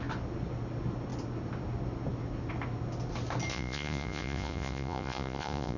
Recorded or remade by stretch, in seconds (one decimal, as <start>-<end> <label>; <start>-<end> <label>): 0.0-3.5 recorded; 3.5-5.8 remade